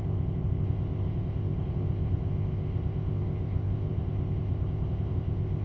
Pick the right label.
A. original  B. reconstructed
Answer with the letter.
B